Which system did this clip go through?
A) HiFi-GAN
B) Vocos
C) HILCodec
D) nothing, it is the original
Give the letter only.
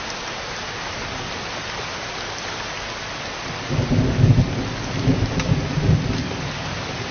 D